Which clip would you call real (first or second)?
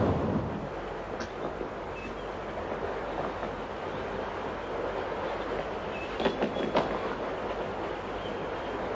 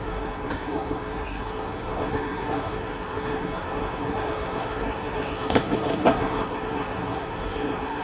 first